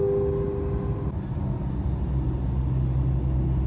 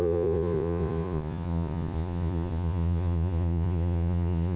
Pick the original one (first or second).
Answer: first